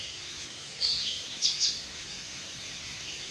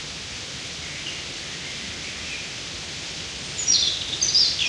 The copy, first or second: first